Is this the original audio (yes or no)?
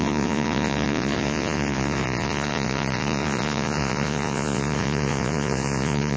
no